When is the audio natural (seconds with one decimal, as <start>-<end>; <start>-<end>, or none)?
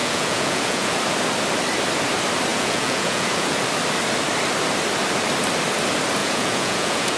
1.0-2.5; 3.6-6.2